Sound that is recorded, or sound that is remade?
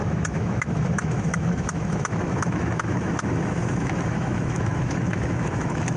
remade